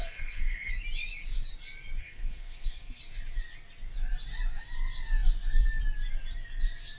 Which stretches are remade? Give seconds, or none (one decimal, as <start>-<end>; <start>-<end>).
0.0-0.7; 2.0-3.0